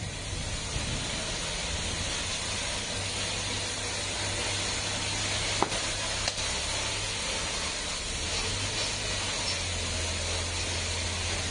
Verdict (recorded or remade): recorded